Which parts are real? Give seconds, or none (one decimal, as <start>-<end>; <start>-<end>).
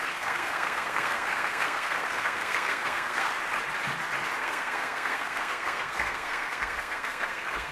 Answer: 3.3-4.4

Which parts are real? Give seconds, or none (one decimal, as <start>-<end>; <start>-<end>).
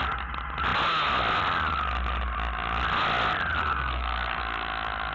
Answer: 0.0-3.6; 4.4-5.1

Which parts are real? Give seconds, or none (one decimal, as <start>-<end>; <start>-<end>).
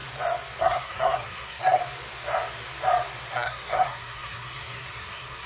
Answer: 0.0-0.6; 1.8-3.3